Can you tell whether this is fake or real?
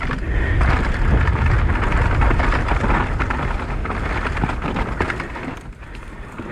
real